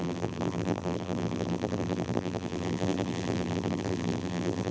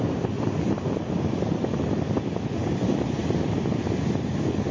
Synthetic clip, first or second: first